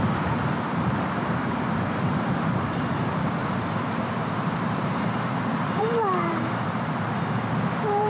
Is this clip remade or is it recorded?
remade